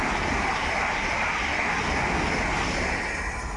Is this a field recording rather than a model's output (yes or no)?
yes